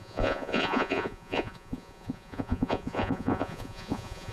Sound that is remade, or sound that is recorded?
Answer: remade